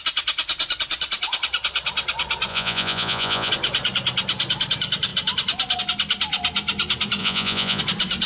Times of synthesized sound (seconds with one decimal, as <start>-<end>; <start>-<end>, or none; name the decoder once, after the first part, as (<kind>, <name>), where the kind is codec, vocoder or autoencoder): 2.5-3.5 (vocoder, Vocos); 7.2-7.8